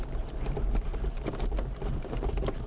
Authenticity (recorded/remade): remade